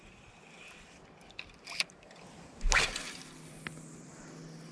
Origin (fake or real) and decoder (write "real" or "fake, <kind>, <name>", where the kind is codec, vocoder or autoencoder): real